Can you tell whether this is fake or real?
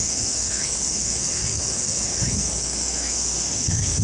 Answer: fake